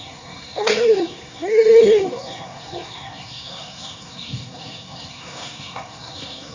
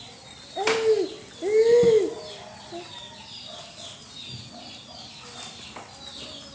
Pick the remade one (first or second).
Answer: first